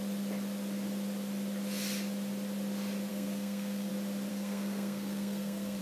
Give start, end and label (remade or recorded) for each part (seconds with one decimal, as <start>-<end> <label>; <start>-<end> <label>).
0.0-3.1 recorded; 3.1-3.9 remade; 3.9-4.3 recorded; 4.3-5.8 remade